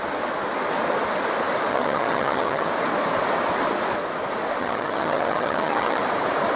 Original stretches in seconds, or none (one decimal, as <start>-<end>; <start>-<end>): 0.0-1.7; 2.7-4.6; 6.0-6.6